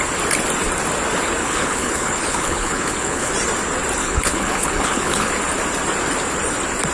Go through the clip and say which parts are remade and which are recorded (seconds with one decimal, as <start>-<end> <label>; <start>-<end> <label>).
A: 0.0-1.4 recorded; 1.4-3.3 remade; 3.3-4.0 recorded; 4.0-5.3 remade; 5.3-6.9 recorded